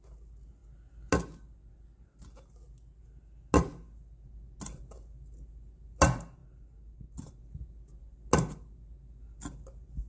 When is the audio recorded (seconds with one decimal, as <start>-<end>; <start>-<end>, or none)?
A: 0.0-10.1